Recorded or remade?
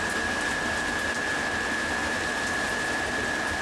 recorded